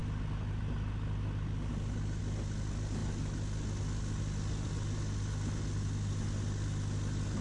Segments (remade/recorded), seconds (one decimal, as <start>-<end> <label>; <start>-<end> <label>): 0.0-7.4 recorded